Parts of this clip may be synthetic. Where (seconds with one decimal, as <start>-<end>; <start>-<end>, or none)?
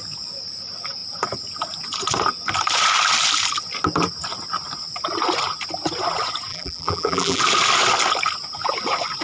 6.5-7.4